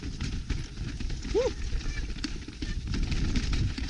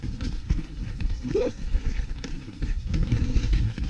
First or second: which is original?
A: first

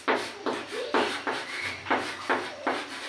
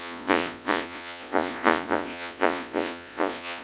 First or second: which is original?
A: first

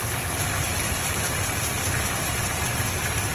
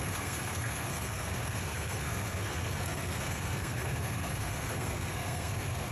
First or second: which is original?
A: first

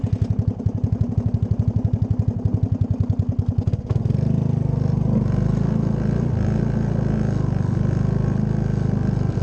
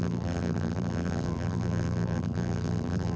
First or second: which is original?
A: first